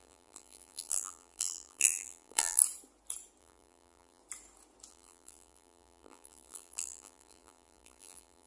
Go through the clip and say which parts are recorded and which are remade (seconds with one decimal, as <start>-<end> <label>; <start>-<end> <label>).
0.0-2.6 remade; 2.6-3.4 recorded; 3.4-4.2 remade; 4.2-4.9 recorded; 4.9-8.5 remade